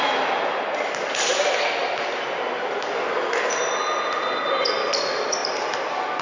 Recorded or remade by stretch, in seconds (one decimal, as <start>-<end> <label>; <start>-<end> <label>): 0.0-6.2 recorded